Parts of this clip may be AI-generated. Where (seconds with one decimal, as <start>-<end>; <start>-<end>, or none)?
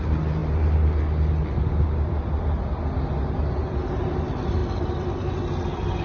none